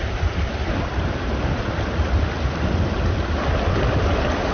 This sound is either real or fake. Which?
real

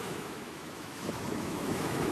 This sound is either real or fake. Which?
fake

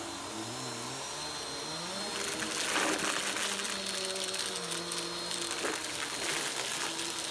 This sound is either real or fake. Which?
real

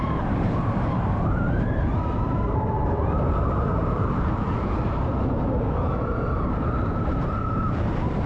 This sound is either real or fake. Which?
fake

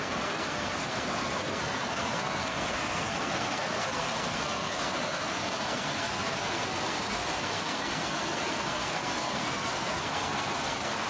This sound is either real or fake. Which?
fake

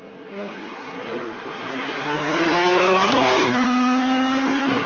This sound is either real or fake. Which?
fake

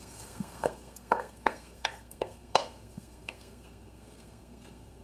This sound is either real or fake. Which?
fake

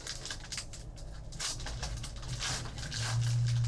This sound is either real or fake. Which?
real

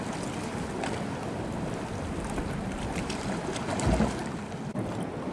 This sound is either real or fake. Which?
real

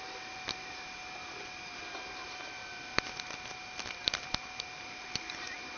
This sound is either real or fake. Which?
real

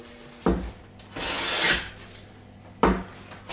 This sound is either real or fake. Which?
real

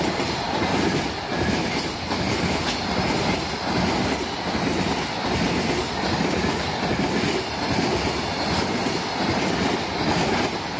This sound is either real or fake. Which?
real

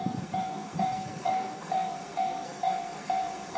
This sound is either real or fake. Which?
fake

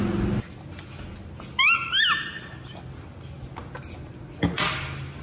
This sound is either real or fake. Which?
real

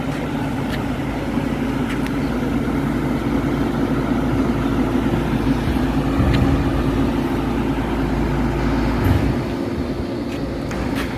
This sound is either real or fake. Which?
real